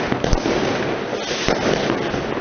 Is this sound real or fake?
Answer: real